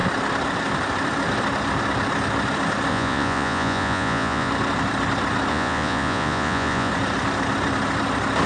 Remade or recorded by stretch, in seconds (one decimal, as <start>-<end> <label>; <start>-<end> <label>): 0.0-2.9 recorded; 2.9-4.5 remade; 4.5-5.5 recorded; 5.5-6.9 remade; 6.9-8.5 recorded